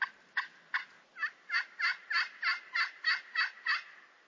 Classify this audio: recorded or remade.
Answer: recorded